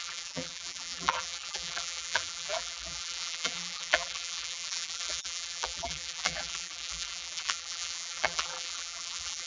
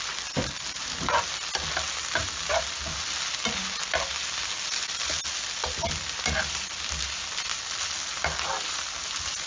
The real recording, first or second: second